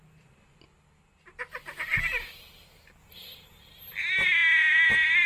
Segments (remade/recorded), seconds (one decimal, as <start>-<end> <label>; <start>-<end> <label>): 0.0-3.0 recorded; 3.0-4.0 remade; 4.0-5.3 recorded